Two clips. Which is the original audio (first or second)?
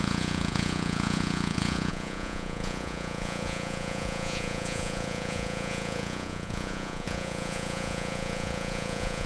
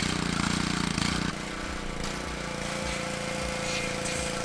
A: second